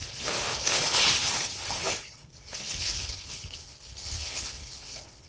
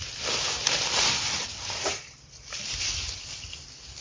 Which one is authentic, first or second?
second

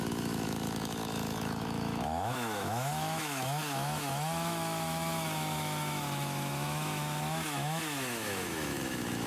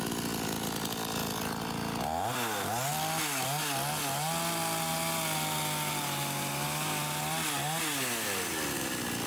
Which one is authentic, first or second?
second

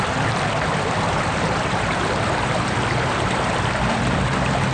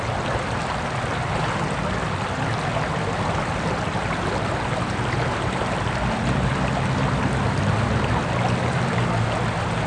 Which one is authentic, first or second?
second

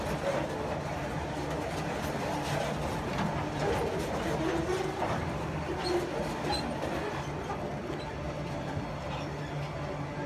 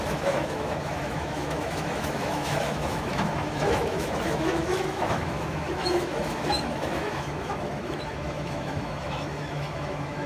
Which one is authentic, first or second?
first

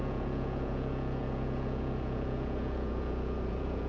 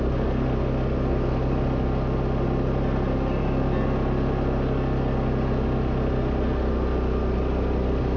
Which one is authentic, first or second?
second